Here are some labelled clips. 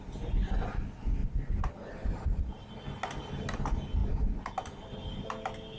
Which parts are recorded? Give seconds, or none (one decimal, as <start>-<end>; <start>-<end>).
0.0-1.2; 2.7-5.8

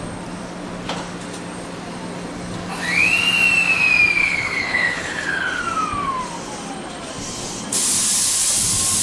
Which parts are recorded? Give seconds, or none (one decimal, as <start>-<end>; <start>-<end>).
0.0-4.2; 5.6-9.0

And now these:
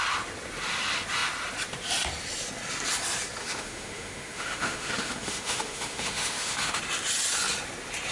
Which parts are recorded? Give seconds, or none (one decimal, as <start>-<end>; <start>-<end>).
0.0-3.4; 6.8-8.1

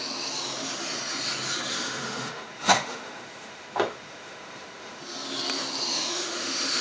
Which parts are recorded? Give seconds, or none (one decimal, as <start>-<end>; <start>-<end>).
0.0-1.7; 5.0-5.9

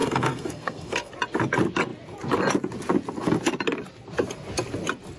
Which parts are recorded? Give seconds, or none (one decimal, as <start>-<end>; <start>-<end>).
1.1-5.2

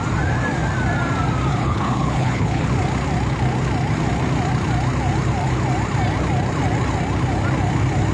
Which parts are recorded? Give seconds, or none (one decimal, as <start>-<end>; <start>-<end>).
0.0-1.5; 2.7-8.1